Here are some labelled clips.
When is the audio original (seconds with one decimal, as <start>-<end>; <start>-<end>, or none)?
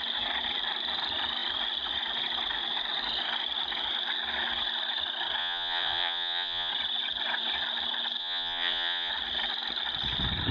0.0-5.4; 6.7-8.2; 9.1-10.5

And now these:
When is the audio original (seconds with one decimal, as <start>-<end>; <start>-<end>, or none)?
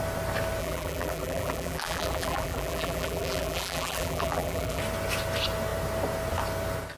0.0-0.6; 4.8-7.0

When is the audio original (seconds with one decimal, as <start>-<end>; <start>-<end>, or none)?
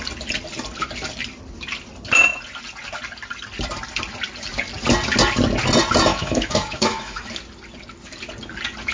0.0-6.1; 7.3-8.9